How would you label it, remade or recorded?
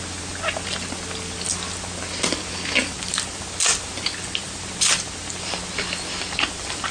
recorded